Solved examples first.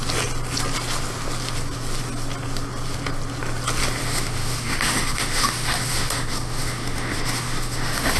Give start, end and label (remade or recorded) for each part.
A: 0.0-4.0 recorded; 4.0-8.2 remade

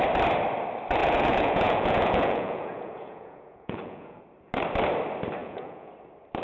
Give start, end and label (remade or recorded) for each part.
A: 0.0-1.0 recorded; 1.0-4.2 remade; 4.2-5.4 recorded; 5.4-5.9 remade; 5.9-6.4 recorded

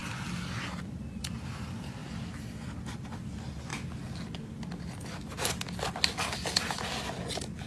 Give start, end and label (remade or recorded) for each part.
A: 0.0-7.7 recorded

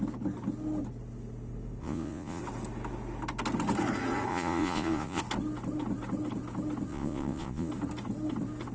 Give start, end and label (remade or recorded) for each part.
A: 0.0-1.8 recorded; 1.8-2.4 remade; 2.4-4.3 recorded; 4.3-5.2 remade; 5.2-6.9 recorded; 6.9-7.7 remade; 7.7-8.7 recorded

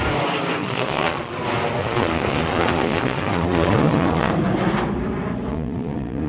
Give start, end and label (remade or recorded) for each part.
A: 0.0-0.6 recorded; 0.6-1.3 remade; 1.3-1.8 recorded; 1.8-4.3 remade; 4.3-5.5 recorded; 5.5-6.3 remade

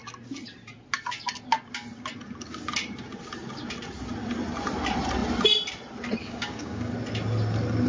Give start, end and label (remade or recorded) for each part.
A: 0.0-6.2 recorded; 6.2-6.9 remade; 6.9-7.9 recorded

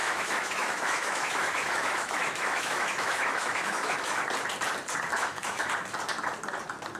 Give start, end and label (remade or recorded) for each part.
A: 0.0-4.2 remade; 4.2-5.1 recorded; 5.1-5.7 remade; 5.7-7.0 recorded